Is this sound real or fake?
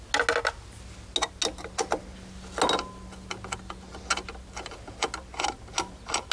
real